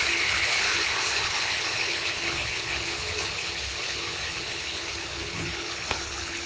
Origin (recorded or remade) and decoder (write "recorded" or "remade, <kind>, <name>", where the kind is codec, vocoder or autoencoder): remade, codec, HILCodec